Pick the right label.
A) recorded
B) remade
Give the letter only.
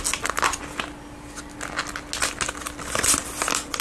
A